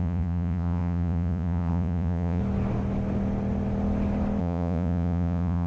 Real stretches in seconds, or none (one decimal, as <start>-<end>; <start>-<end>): 2.4-4.4